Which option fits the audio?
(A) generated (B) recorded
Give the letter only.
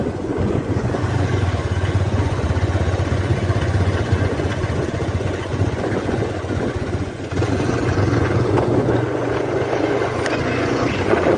A